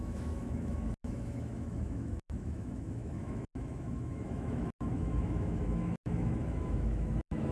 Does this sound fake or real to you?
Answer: fake